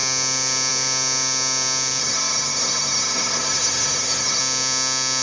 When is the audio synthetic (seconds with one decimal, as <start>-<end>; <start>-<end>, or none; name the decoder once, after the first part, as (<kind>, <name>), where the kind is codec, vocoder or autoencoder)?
2.0-4.4 (codec, SNAC)